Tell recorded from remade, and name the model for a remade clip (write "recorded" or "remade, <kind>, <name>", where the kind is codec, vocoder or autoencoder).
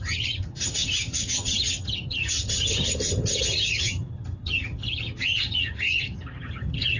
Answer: remade, vocoder, HiFi-GAN